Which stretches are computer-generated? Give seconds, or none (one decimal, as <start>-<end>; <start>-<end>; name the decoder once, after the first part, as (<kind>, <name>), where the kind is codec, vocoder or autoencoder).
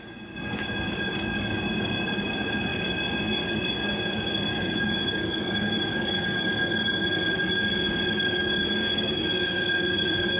0.0-10.4 (codec, DAC)